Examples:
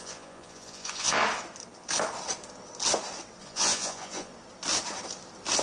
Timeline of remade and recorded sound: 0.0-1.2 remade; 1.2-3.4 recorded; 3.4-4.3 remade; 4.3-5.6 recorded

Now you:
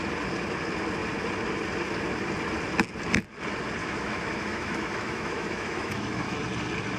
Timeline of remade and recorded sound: 0.0-3.8 recorded; 3.8-6.4 remade; 6.4-7.0 recorded

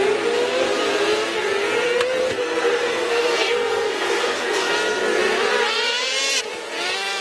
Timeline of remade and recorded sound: 0.0-2.2 recorded; 2.2-4.7 remade; 4.7-7.2 recorded